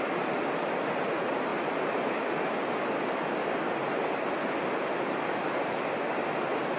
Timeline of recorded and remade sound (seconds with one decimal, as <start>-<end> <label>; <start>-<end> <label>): 0.0-6.8 recorded